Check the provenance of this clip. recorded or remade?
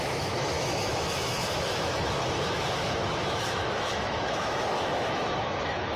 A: remade